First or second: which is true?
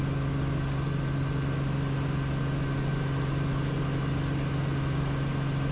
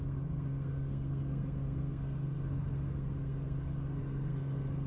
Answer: first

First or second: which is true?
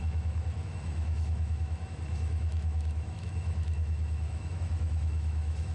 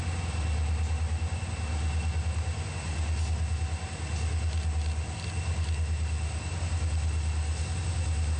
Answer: second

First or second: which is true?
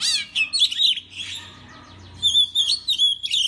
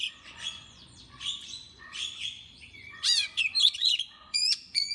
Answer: first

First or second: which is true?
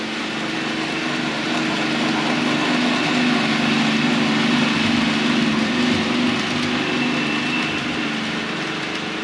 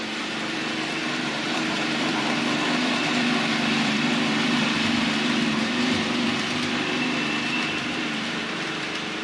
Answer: first